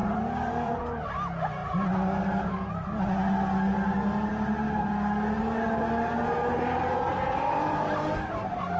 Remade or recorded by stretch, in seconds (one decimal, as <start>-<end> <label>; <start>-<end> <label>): 0.0-0.8 remade; 0.8-7.1 recorded; 7.1-7.9 remade; 7.9-8.8 recorded

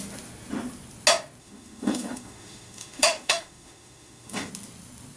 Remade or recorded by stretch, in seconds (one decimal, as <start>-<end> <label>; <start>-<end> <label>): 0.0-1.4 recorded; 1.4-4.5 remade; 4.5-5.2 recorded

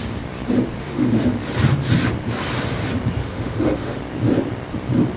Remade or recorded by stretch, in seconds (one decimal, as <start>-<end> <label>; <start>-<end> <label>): 0.0-0.8 recorded; 0.8-1.3 remade; 1.3-3.2 recorded; 3.2-4.0 remade; 4.0-5.2 recorded

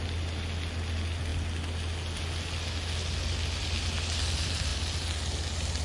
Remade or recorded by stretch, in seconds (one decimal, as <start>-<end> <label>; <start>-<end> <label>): 0.0-5.8 recorded

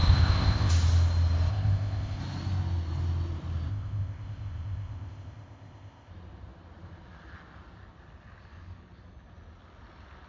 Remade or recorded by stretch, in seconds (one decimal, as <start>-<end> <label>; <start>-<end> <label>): 0.0-0.7 remade; 0.7-1.5 recorded; 1.5-2.2 remade; 2.2-3.7 recorded; 3.7-6.1 remade; 6.1-10.3 recorded

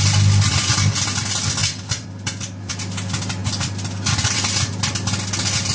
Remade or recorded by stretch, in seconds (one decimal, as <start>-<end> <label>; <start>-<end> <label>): 0.0-1.6 recorded; 1.6-2.7 remade; 2.7-3.4 recorded; 3.4-4.8 remade; 4.8-5.7 recorded

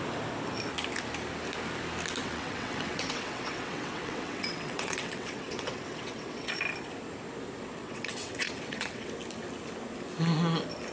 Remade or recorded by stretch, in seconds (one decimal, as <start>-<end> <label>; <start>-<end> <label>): 0.0-2.2 recorded; 2.2-6.5 remade; 6.5-7.8 recorded; 7.8-9.1 remade; 9.1-10.9 recorded